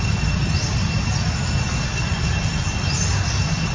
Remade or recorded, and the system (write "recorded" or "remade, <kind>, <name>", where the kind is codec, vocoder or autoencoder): recorded